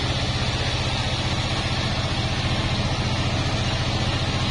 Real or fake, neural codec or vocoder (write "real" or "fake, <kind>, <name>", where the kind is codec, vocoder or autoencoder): real